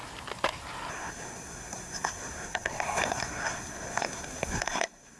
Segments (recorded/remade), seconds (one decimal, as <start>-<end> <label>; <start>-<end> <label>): 0.0-0.9 recorded; 0.9-5.2 remade